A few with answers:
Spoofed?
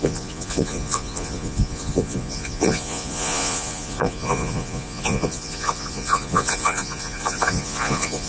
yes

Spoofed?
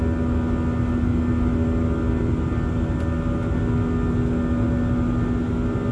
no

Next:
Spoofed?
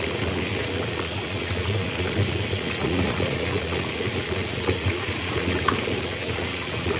yes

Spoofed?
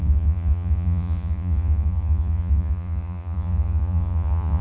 yes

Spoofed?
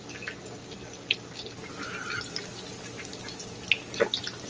no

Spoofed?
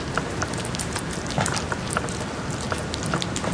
no